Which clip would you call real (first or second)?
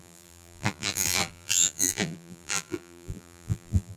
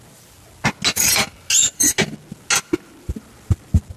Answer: second